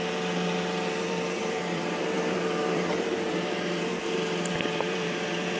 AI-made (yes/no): yes